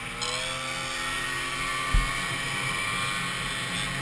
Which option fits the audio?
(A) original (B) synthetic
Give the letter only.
A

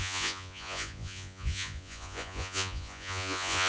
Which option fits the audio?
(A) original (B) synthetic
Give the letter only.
B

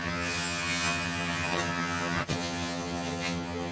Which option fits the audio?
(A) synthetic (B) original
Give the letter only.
A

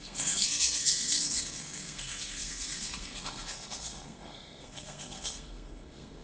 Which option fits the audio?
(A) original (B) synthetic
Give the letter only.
B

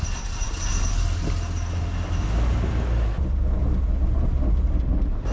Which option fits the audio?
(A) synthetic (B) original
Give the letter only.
B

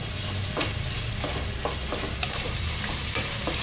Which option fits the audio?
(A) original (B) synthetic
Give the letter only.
A